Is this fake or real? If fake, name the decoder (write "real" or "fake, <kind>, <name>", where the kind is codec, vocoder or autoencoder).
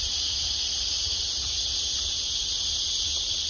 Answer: real